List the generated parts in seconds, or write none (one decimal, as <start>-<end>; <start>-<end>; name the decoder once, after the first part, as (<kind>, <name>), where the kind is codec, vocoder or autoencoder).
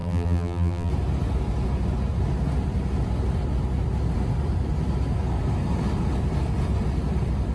0.0-0.9 (vocoder, BigVGAN v2)